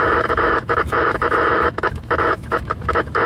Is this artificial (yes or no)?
yes